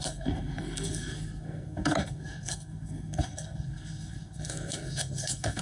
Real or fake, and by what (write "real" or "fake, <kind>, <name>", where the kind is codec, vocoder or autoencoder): fake, codec, SNAC